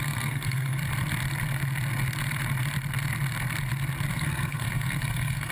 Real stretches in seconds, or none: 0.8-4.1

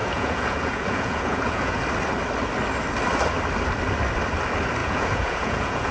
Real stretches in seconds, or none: 1.8-4.8

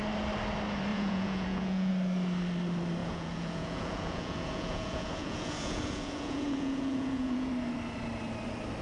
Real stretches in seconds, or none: 0.0-0.9; 1.9-3.0; 7.5-8.8

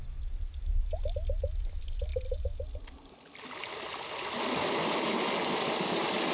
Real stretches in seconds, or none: 0.0-6.3

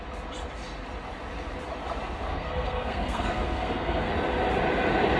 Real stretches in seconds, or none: 0.0-2.3; 4.1-5.2

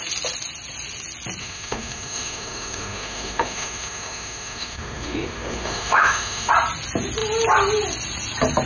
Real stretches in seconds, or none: 0.0-1.4; 6.5-8.7

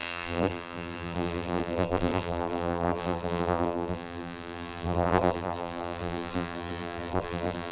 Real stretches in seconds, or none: none